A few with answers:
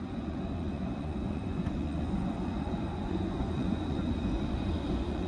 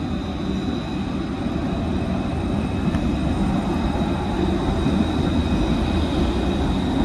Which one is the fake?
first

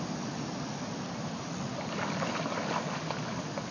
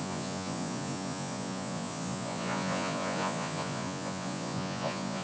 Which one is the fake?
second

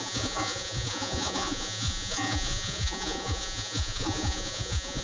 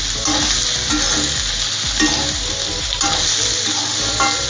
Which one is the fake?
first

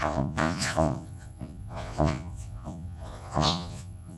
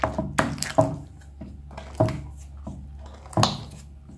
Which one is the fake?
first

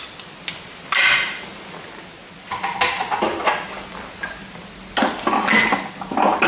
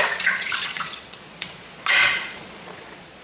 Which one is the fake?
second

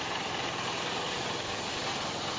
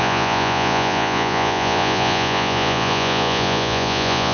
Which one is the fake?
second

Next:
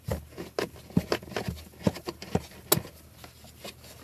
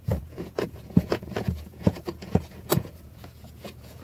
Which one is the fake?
second